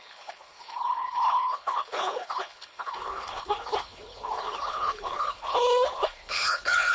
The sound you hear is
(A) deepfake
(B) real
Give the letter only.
A